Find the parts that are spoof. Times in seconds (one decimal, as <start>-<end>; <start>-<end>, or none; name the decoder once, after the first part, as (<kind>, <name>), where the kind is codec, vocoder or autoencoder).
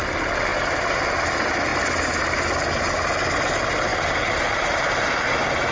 0.5-1.2 (vocoder, BigVGAN v2)